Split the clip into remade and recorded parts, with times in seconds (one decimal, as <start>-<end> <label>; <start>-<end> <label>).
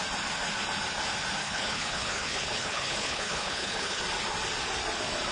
0.0-1.4 recorded; 1.4-4.0 remade; 4.0-5.3 recorded